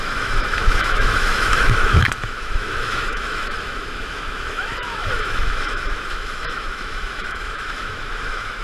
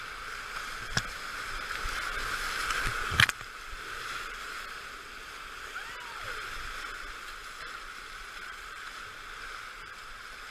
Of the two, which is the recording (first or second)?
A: second